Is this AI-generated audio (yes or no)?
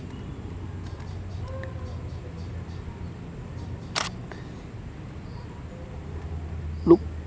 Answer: no